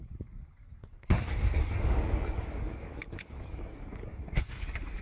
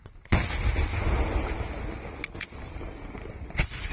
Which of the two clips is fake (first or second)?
first